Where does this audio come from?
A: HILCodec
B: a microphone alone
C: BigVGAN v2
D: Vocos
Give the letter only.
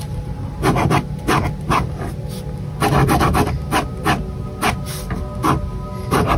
B